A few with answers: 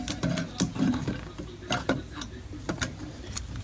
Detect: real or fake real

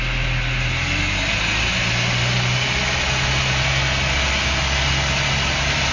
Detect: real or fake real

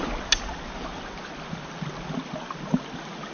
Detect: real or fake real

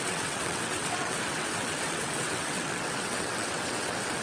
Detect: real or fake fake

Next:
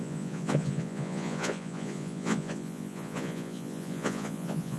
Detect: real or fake fake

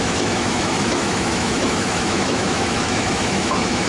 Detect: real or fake fake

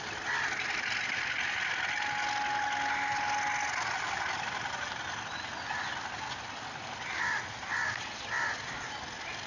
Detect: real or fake real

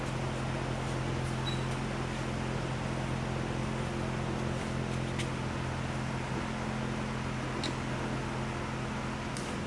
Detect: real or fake real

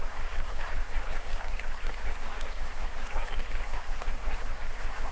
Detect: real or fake fake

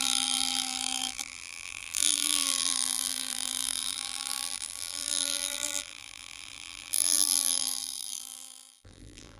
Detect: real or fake fake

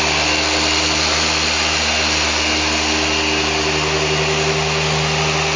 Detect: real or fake real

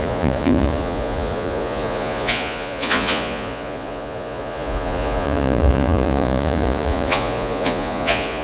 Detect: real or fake fake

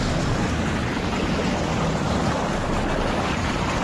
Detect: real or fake fake